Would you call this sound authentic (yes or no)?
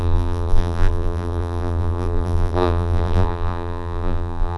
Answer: no